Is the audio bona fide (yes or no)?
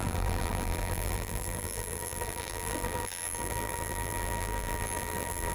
no